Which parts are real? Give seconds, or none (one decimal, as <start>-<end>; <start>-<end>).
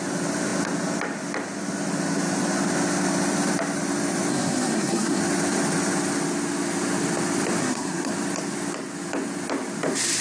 0.0-4.3; 5.2-7.6; 8.1-10.2